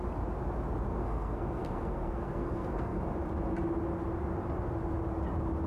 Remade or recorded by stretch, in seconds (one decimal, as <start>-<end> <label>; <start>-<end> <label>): 0.0-0.9 recorded; 0.9-3.0 remade; 3.0-5.7 recorded